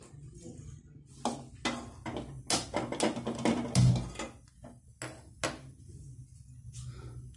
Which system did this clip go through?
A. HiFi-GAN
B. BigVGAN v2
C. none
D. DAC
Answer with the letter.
C